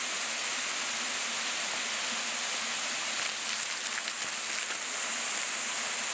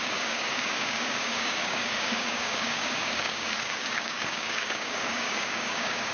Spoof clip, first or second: second